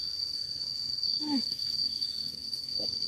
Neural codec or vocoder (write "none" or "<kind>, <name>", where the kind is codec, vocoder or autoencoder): codec, SNAC